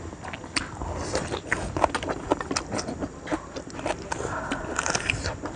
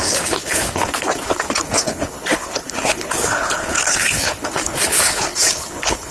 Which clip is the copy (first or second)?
second